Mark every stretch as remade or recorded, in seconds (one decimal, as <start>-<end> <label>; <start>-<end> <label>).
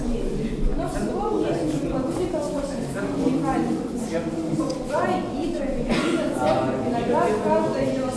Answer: 0.0-8.2 recorded